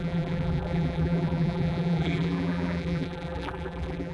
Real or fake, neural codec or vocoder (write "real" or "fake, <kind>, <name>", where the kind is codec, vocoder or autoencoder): fake, vocoder, BigVGAN v2